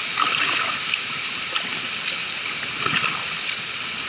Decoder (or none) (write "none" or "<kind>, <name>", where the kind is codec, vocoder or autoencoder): none